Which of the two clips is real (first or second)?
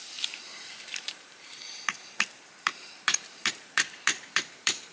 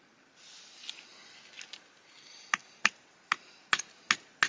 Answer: second